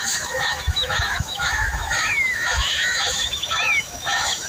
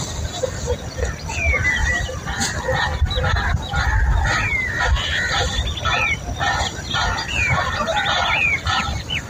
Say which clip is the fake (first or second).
first